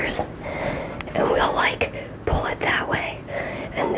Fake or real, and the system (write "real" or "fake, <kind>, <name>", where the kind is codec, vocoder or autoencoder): real